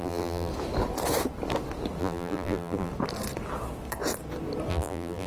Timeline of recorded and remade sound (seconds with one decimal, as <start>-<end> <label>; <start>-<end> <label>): 0.0-0.5 remade; 0.5-2.0 recorded; 2.0-2.9 remade; 2.9-4.7 recorded; 4.7-5.3 remade